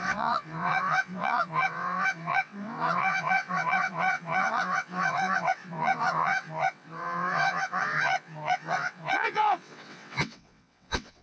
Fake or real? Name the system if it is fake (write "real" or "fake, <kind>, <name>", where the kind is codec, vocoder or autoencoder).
fake, vocoder, WaveNeXt